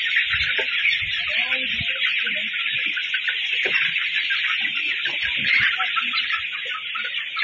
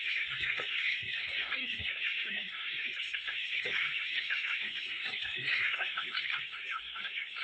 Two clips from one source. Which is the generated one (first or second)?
second